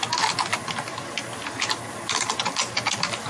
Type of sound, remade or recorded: recorded